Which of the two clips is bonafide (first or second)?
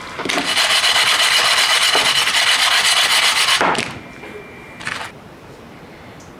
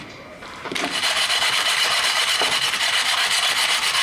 first